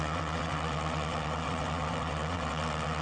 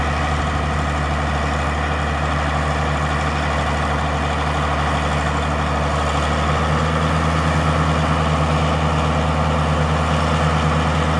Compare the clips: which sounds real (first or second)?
second